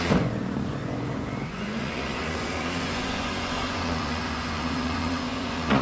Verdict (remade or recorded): remade